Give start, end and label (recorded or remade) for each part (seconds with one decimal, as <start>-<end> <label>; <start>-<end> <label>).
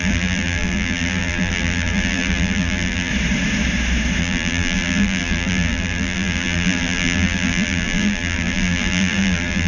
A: 0.0-3.1 remade; 3.1-4.2 recorded; 4.2-9.7 remade